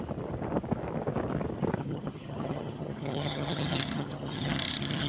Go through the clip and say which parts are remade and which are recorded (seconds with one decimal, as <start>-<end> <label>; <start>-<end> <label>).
0.0-1.8 recorded; 1.8-5.1 remade

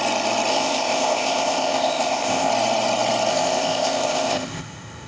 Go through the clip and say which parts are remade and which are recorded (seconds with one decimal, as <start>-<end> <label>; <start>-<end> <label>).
0.0-0.5 recorded; 0.5-2.5 remade; 2.5-3.3 recorded; 3.3-5.1 remade

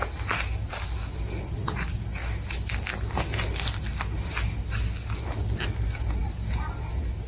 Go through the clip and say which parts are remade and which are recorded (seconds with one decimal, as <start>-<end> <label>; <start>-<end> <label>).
0.0-7.3 recorded

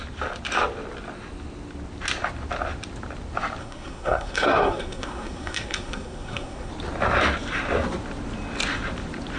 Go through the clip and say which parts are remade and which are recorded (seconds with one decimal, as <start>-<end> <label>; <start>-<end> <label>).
0.0-3.6 recorded; 3.6-6.7 remade; 6.7-9.4 recorded

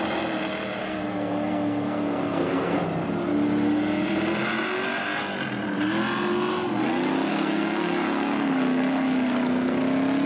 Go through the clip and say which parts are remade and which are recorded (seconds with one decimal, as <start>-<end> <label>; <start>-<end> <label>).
0.0-0.8 recorded; 0.8-2.8 remade; 2.8-7.3 recorded; 7.3-9.8 remade; 9.8-10.3 recorded

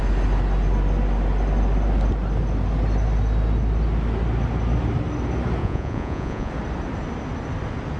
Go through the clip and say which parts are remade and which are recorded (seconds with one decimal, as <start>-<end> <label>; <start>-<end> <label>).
0.0-5.6 recorded; 5.6-6.5 remade; 6.5-8.0 recorded